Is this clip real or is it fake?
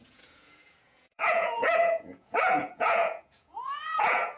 fake